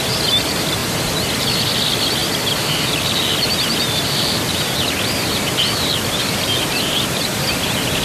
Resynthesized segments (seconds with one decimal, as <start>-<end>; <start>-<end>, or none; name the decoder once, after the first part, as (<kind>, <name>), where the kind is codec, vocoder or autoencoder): 2.2-7.0 (vocoder, BigVGAN v2)